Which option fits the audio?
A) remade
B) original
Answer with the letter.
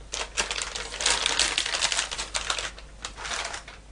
B